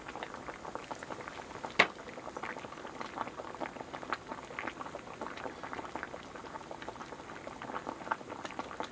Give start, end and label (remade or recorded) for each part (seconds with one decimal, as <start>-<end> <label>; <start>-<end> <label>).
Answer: 0.0-8.9 recorded